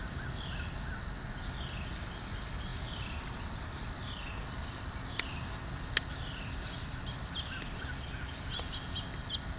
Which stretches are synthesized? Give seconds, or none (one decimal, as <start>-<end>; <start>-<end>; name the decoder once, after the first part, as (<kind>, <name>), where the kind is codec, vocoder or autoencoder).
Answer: none